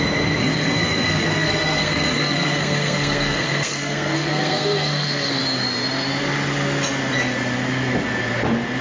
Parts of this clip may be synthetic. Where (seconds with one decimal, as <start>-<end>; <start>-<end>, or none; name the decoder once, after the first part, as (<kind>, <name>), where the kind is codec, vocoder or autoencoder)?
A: 0.4-5.4 (codec, SNAC)

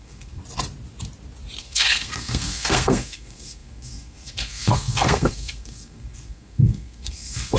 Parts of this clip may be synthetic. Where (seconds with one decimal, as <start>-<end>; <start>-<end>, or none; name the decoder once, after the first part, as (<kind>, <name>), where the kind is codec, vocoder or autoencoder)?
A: 0.0-0.4 (codec, SNAC); 1.6-7.6